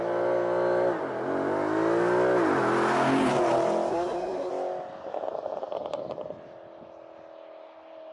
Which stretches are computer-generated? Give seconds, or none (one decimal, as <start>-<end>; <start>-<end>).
3.9-4.5